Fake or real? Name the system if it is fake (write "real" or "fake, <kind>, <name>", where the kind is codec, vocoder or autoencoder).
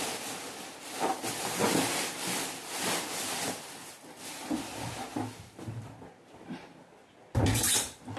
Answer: fake, vocoder, BigVGAN v2